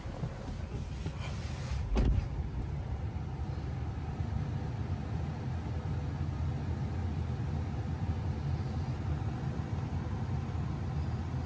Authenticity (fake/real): real